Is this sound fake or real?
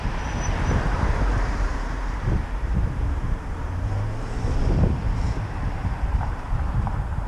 fake